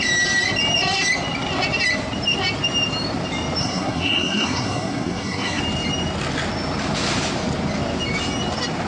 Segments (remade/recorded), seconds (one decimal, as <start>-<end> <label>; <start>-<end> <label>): 0.0-3.6 recorded; 3.6-5.6 remade; 5.6-8.9 recorded